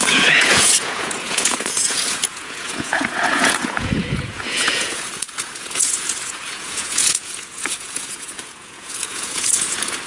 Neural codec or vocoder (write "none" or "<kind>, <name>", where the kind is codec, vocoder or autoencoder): vocoder, Vocos